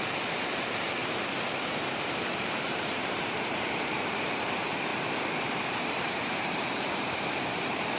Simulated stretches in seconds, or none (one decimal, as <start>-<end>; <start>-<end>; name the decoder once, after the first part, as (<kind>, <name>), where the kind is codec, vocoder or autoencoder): 0.0-8.0 (vocoder, BigVGAN v2)